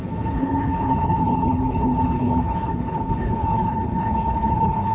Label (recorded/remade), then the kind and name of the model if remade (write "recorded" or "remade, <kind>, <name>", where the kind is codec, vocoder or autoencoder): remade, codec, HILCodec